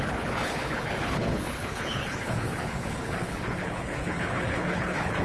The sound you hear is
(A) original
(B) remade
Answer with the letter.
B